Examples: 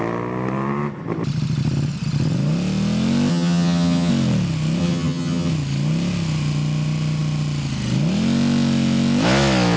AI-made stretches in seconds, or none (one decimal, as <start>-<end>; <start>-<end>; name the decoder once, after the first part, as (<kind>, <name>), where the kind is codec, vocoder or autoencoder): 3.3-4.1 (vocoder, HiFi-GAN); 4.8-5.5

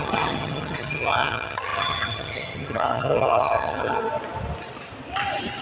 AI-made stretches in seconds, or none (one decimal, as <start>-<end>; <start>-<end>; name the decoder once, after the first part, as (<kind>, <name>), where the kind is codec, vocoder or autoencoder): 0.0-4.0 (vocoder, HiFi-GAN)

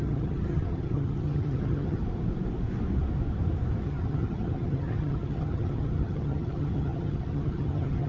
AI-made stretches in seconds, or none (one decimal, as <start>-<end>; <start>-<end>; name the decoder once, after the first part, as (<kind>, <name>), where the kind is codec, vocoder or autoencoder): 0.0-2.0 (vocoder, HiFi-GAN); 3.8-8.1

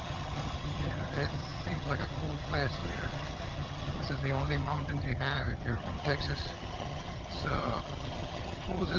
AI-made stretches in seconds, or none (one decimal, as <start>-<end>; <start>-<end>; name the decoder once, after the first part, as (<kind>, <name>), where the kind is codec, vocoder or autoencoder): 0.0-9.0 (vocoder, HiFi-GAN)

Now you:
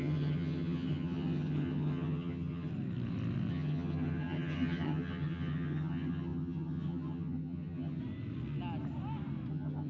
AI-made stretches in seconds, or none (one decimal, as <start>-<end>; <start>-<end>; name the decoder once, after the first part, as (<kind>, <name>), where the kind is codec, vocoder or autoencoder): 0.0-2.7 (vocoder, HiFi-GAN); 3.5-8.0; 9.5-9.9

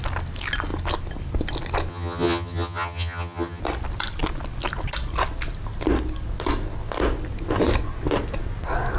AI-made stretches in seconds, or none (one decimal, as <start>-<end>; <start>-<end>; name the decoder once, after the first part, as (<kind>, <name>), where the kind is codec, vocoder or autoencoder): 1.9-3.6 (vocoder, HiFi-GAN)